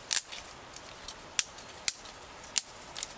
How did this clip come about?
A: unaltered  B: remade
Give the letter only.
A